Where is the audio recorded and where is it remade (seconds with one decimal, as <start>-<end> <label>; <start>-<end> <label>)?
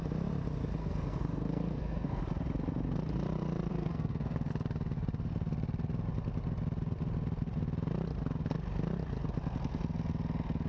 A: 0.0-0.8 recorded; 0.8-2.2 remade; 2.2-3.7 recorded; 3.7-4.5 remade; 4.5-10.7 recorded